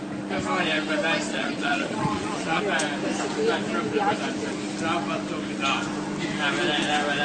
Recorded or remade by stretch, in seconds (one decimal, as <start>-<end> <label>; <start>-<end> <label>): 0.0-1.3 recorded; 1.3-2.6 remade; 2.6-7.2 recorded